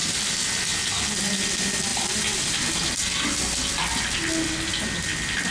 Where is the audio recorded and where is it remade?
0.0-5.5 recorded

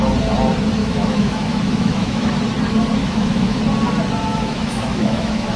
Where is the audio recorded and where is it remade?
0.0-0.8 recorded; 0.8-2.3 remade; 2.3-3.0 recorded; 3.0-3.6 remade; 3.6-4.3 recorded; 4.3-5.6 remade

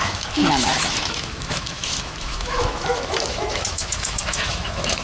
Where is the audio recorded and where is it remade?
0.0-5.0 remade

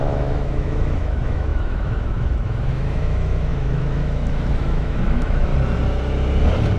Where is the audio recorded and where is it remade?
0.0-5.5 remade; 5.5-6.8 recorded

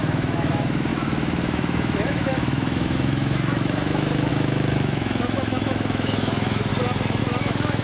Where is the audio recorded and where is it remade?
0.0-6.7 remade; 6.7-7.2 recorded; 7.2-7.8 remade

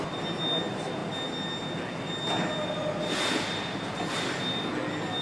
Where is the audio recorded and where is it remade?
0.0-5.2 recorded